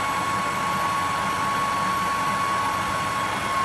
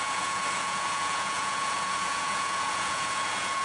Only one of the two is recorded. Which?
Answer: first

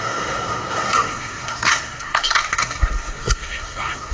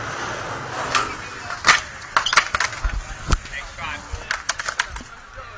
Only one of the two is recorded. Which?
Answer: second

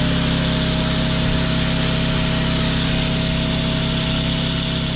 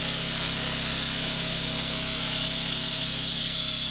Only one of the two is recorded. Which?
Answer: first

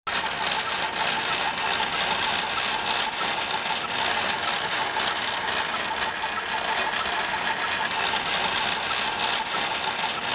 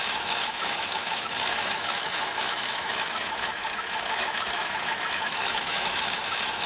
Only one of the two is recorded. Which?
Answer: first